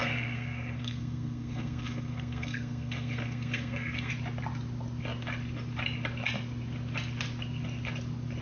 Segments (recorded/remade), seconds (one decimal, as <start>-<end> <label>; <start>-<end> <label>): 0.0-4.1 remade; 4.1-8.4 recorded